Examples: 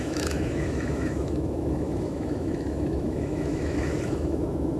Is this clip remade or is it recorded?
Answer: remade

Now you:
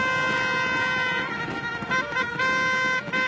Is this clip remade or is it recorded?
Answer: recorded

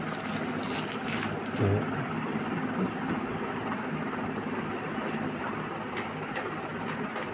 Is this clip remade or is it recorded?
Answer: recorded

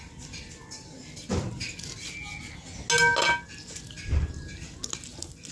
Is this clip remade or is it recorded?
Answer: recorded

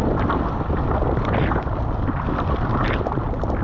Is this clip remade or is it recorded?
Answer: recorded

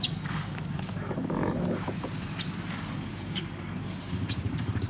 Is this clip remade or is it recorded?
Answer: remade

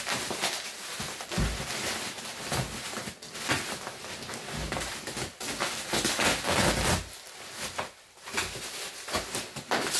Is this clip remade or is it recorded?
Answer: recorded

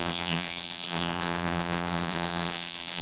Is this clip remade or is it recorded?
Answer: remade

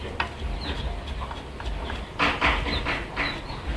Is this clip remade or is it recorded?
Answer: recorded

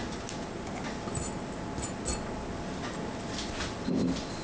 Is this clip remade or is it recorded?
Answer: recorded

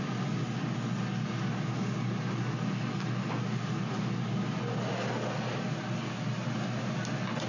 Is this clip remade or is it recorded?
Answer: recorded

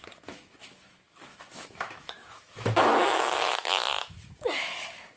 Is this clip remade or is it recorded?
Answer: remade